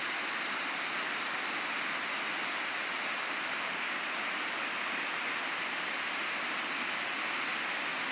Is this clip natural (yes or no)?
yes